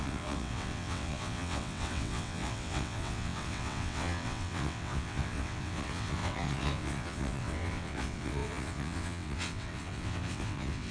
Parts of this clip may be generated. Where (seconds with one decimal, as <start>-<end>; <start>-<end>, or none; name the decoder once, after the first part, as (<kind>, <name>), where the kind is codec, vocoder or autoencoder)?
0.0-10.9 (vocoder, WaveNeXt)